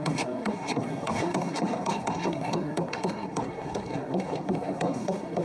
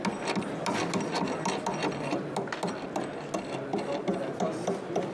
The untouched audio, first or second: second